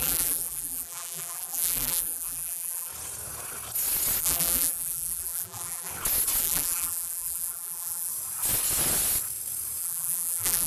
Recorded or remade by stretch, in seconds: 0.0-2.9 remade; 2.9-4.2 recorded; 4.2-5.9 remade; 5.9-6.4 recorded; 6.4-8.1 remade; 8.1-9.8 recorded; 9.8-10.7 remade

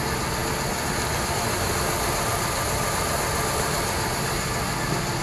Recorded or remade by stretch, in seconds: 0.0-5.2 recorded

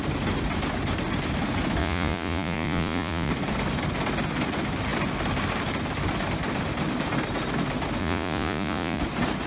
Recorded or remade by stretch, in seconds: 0.0-1.8 recorded; 1.8-3.3 remade; 3.3-8.0 recorded; 8.0-9.0 remade; 9.0-9.5 recorded

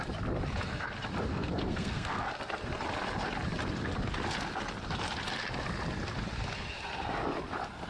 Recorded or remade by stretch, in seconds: 0.0-1.3 recorded; 1.3-2.3 remade; 2.3-7.9 recorded